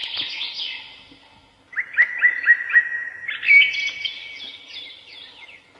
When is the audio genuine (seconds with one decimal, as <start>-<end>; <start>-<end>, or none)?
0.0-5.8